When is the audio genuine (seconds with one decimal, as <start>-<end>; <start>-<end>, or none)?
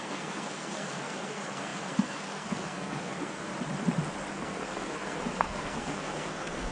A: 3.5-4.3